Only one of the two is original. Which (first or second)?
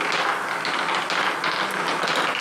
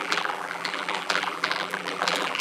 first